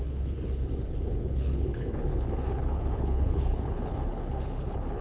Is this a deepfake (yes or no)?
yes